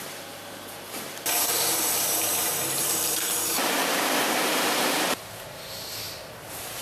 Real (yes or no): no